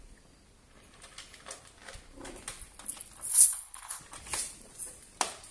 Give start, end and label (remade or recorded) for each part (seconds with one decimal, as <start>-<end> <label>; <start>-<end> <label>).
0.0-3.3 recorded; 3.3-4.0 remade; 4.0-5.5 recorded

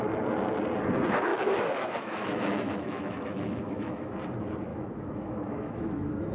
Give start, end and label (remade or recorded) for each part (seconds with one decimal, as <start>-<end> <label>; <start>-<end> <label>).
0.0-1.3 recorded; 1.3-4.1 remade; 4.1-4.7 recorded; 4.7-6.3 remade

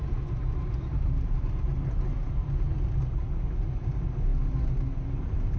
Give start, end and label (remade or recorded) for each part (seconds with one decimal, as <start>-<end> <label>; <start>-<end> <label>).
0.0-5.6 recorded

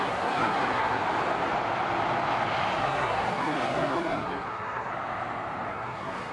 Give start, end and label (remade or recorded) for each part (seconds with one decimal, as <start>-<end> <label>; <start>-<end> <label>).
0.0-1.0 remade; 1.0-2.8 recorded; 2.8-4.9 remade; 4.9-5.7 recorded; 5.7-6.3 remade

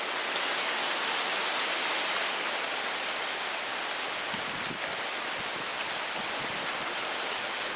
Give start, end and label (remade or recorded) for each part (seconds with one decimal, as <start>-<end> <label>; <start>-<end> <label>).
0.0-7.8 recorded

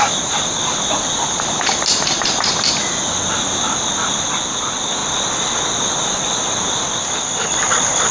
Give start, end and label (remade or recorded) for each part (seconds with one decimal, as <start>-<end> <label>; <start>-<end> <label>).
0.0-8.1 recorded